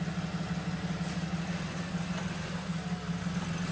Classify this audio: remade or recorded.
recorded